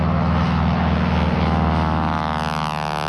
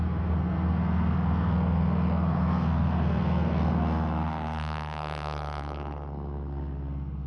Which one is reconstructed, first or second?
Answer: second